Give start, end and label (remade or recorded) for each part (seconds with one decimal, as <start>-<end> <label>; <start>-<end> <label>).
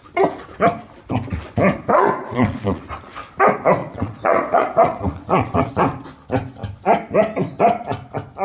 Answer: 0.0-1.9 recorded; 1.9-2.8 remade; 2.8-3.8 recorded; 3.8-5.7 remade; 5.7-8.4 recorded